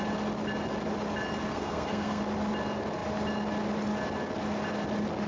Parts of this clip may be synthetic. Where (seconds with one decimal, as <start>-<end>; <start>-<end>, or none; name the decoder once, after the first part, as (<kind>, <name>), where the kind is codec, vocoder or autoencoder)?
1.5-2.2 (codec, SNAC)